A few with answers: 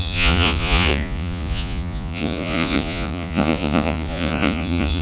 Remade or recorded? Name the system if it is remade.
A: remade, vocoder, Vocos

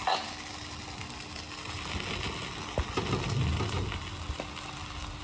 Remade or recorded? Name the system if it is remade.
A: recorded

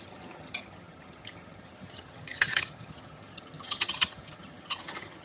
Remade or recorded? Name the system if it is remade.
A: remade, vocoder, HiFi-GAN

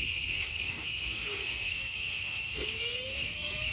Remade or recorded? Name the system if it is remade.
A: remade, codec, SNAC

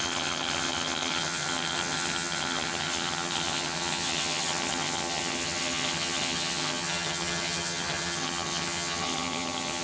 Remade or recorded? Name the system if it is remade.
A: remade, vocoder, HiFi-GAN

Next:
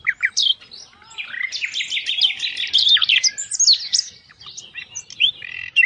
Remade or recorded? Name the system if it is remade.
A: recorded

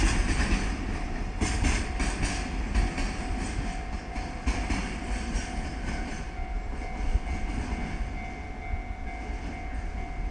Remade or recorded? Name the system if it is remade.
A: recorded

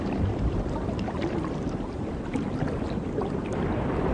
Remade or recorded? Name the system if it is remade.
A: recorded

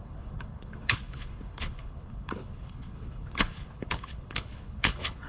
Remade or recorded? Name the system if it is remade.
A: remade, codec, HILCodec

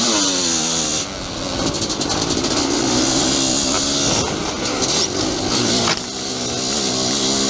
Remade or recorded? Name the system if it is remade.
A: recorded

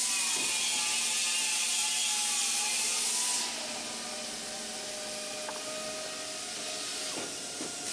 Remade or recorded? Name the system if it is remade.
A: recorded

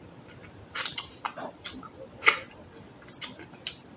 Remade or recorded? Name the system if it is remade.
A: recorded